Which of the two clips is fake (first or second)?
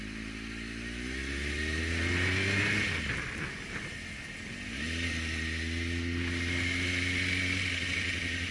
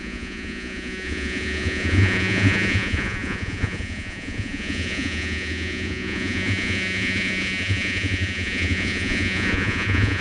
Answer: second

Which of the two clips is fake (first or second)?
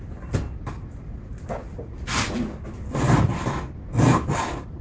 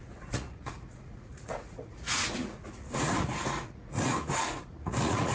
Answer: second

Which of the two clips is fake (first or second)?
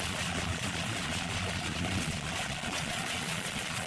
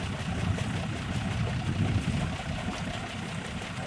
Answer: first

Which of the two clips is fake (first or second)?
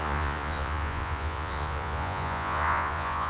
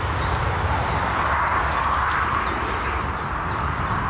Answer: first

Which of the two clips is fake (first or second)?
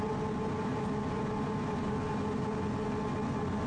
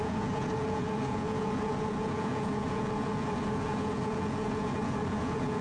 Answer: second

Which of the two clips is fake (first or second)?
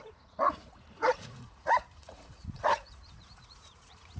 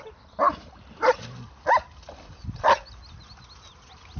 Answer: first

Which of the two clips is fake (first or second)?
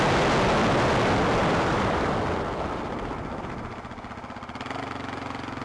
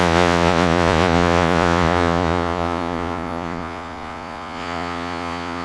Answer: second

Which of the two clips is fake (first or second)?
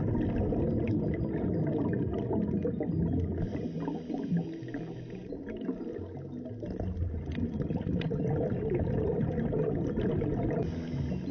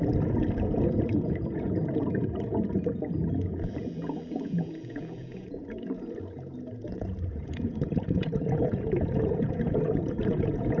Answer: second